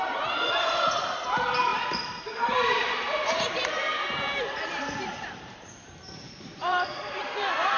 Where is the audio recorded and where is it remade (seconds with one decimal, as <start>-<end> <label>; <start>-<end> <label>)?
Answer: 0.0-7.8 remade